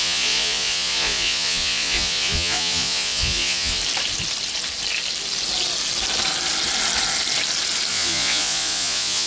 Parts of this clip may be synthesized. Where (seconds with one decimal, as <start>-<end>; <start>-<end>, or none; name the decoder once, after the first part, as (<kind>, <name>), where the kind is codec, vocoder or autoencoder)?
0.0-3.8 (vocoder, Vocos); 7.9-9.3